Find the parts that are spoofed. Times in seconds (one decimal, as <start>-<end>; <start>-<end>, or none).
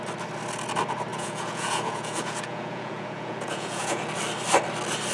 1.1-4.1